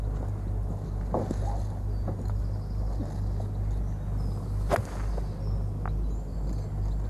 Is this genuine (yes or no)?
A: yes